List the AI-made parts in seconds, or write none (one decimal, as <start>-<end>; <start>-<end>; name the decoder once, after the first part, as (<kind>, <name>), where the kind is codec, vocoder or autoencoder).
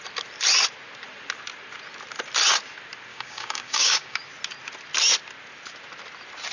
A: 3.1-4.2 (codec, DAC)